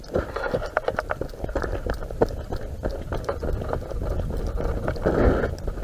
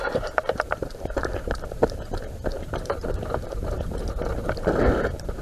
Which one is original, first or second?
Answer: first